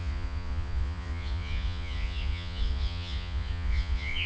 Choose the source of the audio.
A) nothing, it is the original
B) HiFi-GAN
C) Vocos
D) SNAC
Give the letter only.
C